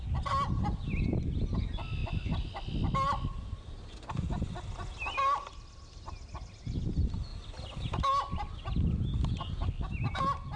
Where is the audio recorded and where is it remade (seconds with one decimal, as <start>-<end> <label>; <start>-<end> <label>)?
0.0-10.6 recorded